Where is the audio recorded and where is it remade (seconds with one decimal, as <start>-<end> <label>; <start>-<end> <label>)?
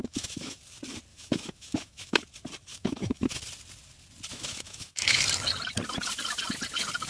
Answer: 0.0-0.6 remade; 0.6-1.1 recorded; 1.1-2.2 remade; 2.2-2.7 recorded; 2.7-3.4 remade; 3.4-4.3 recorded; 4.3-5.2 remade; 5.2-7.1 recorded